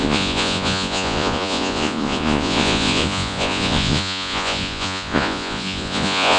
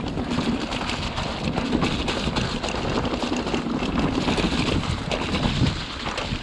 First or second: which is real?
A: second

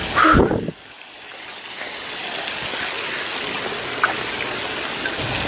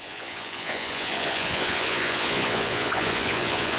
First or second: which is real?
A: first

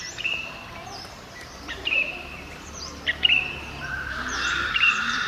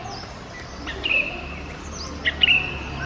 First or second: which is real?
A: second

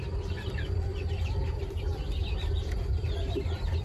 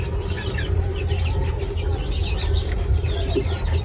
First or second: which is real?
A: second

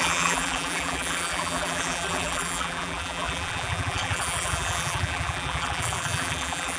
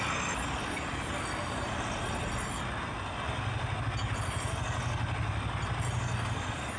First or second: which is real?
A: second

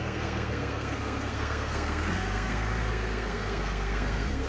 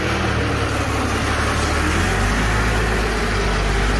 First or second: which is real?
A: second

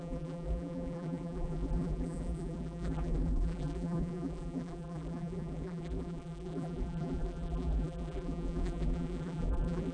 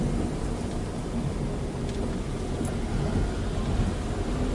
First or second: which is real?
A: second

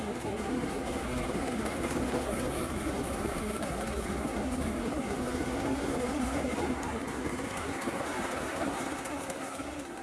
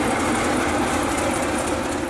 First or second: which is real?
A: second